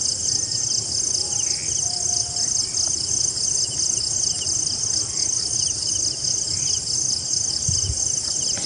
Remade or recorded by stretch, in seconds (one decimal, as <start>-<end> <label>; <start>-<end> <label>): 0.0-8.7 recorded